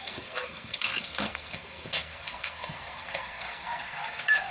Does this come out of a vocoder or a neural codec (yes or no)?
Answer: yes